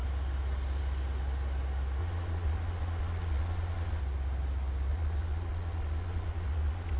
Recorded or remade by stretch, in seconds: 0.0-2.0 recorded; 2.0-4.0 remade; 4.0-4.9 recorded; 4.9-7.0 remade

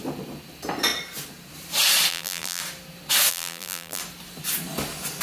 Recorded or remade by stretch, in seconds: 0.0-2.1 recorded; 2.1-2.6 remade; 2.6-3.3 recorded; 3.3-4.0 remade; 4.0-5.2 recorded

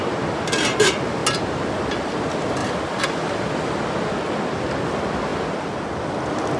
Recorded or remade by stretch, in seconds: 0.0-6.6 recorded